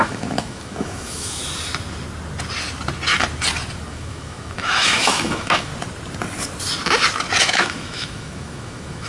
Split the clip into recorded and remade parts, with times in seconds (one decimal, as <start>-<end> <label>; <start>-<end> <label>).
0.0-1.4 remade; 1.4-3.9 recorded; 3.9-5.7 remade; 5.7-7.4 recorded; 7.4-9.1 remade